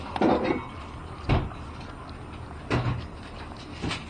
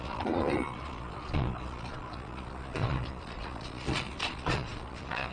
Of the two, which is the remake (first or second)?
second